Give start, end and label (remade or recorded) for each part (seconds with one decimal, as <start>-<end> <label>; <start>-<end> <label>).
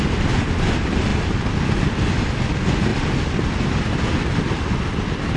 0.0-5.4 recorded